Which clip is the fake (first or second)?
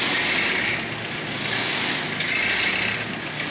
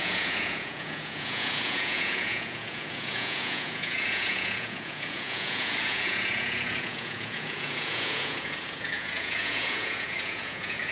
second